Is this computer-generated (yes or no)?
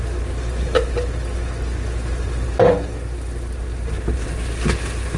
no